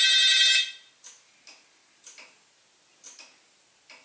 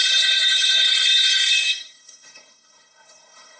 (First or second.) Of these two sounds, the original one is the first